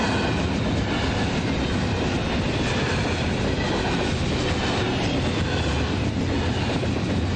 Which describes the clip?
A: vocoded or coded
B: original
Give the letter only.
B